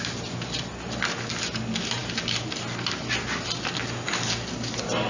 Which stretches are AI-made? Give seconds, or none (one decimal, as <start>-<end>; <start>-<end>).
none